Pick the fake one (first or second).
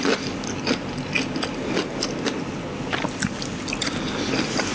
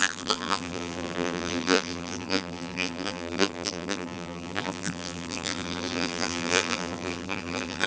second